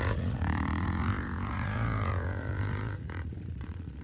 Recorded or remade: remade